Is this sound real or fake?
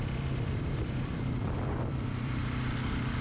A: fake